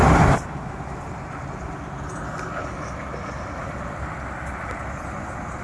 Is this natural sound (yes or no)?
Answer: yes